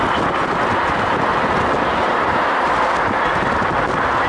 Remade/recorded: recorded